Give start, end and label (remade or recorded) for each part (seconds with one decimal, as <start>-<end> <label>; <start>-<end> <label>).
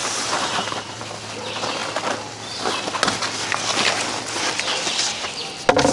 0.0-1.0 remade; 1.0-5.9 recorded